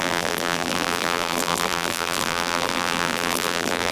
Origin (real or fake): fake